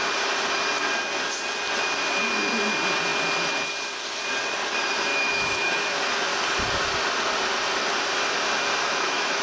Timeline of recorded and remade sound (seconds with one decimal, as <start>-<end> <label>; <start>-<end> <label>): 0.0-5.1 recorded; 5.1-6.0 remade; 6.0-8.8 recorded; 8.8-9.4 remade